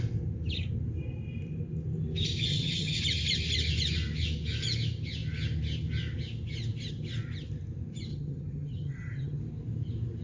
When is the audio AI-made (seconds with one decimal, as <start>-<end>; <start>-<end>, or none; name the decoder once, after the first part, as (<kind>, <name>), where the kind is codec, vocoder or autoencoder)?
2.5-3.0 (vocoder, HiFi-GAN); 8.1-9.4